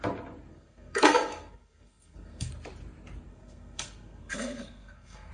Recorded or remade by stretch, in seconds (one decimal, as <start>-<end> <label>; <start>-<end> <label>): 0.0-0.5 recorded; 0.5-2.5 remade; 2.5-3.3 recorded; 3.3-5.3 remade